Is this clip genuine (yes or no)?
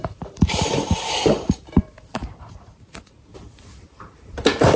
no